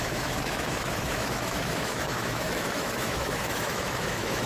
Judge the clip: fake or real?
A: fake